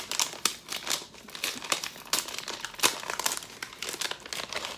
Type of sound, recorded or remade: recorded